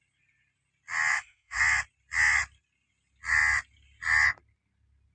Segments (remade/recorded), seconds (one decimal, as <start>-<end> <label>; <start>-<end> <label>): 0.0-1.1 recorded; 1.1-1.6 remade; 1.6-5.1 recorded

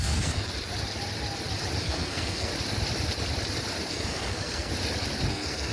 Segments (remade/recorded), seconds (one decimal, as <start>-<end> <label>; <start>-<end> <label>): 0.0-0.5 remade; 0.5-1.8 recorded; 1.8-2.5 remade; 2.5-3.9 recorded; 3.9-4.7 remade; 4.7-5.3 recorded; 5.3-5.7 remade

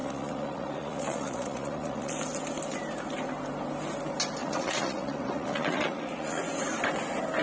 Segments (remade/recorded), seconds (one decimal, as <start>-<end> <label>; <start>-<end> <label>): 0.0-2.1 remade; 2.1-4.4 recorded; 4.4-6.4 remade; 6.4-7.4 recorded

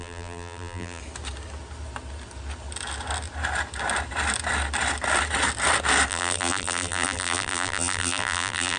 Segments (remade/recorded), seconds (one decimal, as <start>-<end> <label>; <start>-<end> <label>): 0.0-1.0 remade; 1.0-6.1 recorded; 6.1-8.8 remade

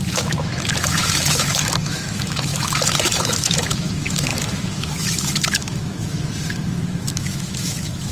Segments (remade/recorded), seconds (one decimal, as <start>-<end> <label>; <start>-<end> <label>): 0.0-8.1 remade